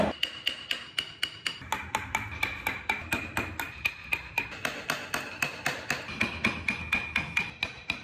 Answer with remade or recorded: recorded